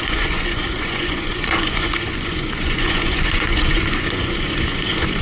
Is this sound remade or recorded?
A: remade